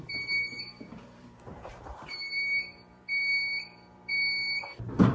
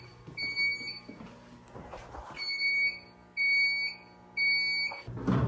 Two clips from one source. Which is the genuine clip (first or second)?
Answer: second